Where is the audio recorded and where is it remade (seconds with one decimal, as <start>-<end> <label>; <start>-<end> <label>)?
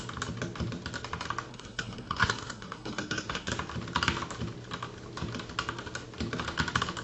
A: 0.0-1.5 recorded; 1.5-3.5 remade; 3.5-7.0 recorded